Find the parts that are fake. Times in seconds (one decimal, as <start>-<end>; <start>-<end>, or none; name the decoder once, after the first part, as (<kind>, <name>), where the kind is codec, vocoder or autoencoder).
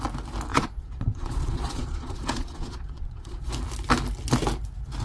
0.5-3.5 (vocoder, Vocos)